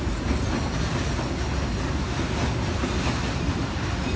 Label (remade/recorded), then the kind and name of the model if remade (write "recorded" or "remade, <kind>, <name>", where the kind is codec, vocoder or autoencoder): recorded